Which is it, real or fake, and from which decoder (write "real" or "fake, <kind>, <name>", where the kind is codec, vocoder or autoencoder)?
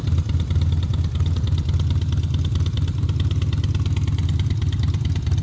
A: real